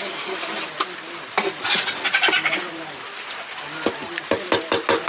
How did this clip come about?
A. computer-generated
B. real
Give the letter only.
B